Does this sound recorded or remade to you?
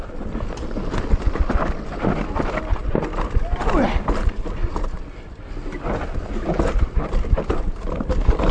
recorded